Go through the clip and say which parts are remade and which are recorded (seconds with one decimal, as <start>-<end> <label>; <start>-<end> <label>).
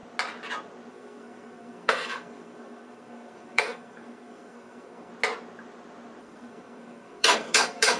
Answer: 0.0-0.9 recorded; 0.9-5.1 remade; 5.1-6.2 recorded; 6.2-8.0 remade